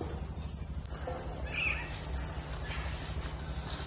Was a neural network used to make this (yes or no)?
no